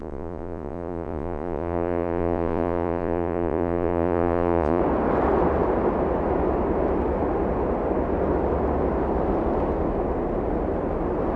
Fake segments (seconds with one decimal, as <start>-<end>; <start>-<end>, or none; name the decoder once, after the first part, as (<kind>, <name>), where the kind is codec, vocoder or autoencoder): 0.0-4.8 (vocoder, Vocos)